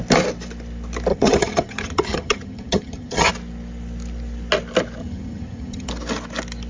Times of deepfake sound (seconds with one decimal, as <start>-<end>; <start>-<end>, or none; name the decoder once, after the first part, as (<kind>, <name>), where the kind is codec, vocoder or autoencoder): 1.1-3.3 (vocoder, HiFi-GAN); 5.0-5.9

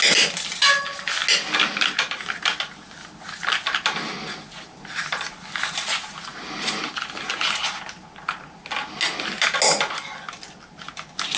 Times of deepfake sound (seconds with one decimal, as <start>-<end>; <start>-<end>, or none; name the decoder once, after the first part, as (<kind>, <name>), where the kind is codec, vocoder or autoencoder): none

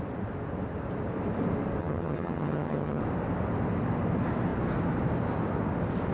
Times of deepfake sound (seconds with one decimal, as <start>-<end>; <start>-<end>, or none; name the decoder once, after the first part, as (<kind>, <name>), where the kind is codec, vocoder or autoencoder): 1.8-3.0 (vocoder, HiFi-GAN)

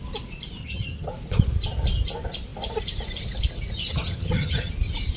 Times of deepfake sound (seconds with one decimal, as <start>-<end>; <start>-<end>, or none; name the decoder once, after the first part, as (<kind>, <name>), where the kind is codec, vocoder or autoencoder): 0.6-1.1 (vocoder, HiFi-GAN); 3.9-4.7

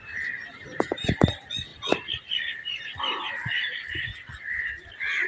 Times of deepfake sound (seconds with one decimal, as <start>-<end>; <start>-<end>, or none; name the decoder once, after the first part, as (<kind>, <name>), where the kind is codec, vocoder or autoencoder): none